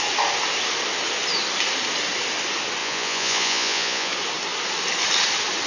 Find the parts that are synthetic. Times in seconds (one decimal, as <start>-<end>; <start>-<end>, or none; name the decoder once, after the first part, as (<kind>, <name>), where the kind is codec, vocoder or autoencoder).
2.8-4.1 (vocoder, Vocos)